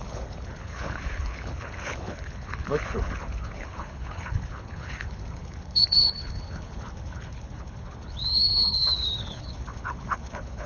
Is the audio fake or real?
fake